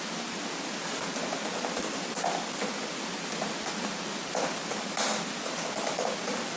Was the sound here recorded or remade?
recorded